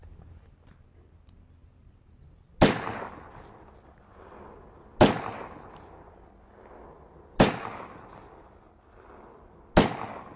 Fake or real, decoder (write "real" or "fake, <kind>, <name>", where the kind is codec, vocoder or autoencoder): real